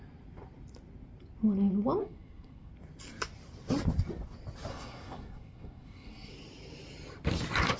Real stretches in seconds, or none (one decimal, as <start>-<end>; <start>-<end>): 0.0-2.0; 2.7-4.7; 6.3-7.8